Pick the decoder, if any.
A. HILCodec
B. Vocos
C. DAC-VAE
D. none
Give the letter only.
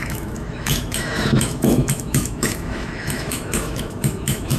C